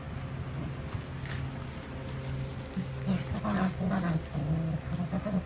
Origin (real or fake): real